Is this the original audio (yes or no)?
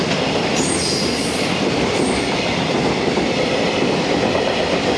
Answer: no